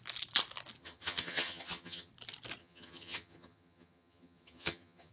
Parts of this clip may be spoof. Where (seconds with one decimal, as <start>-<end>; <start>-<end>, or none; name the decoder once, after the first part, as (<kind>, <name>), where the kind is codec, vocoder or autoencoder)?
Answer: 0.8-2.1 (vocoder, HiFi-GAN); 2.6-5.1